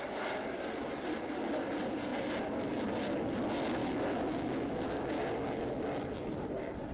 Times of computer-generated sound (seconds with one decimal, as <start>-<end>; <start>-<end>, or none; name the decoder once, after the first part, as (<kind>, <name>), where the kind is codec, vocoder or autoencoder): 3.8-5.1 (autoencoder, DAC-VAE)